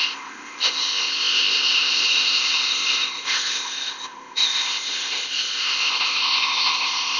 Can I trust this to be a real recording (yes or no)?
no